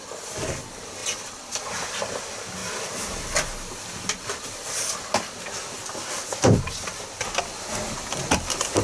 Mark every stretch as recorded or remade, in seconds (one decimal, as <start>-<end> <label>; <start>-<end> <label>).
0.0-8.8 recorded